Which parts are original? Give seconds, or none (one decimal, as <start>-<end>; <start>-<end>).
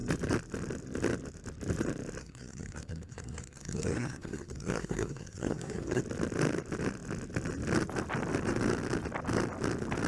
0.0-2.2; 6.0-10.1